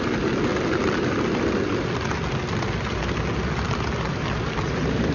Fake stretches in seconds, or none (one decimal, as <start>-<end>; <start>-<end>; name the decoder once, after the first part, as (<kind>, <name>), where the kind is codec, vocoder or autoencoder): none